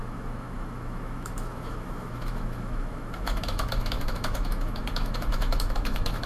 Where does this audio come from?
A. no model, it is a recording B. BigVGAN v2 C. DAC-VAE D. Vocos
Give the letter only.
C